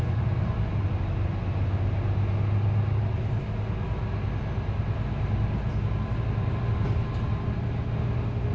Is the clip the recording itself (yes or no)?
yes